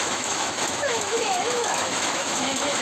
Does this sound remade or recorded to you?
remade